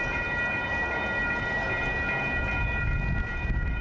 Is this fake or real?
real